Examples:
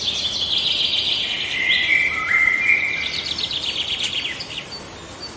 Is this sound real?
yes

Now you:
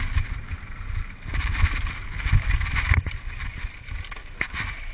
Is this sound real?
no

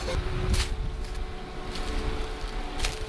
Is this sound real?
yes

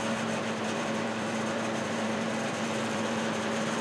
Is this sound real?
no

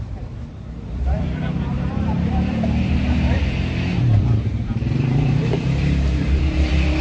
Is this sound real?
no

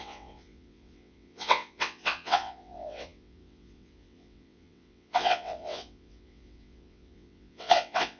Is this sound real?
no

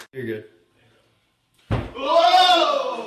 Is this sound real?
no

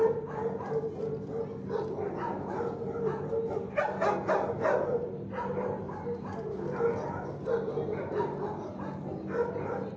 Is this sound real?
yes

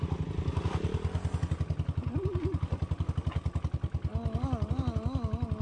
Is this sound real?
yes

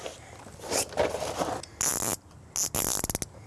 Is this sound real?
yes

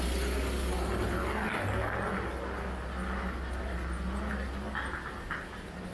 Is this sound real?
yes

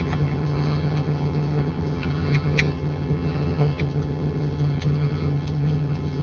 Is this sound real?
no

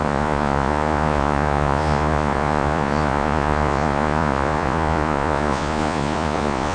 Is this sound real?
no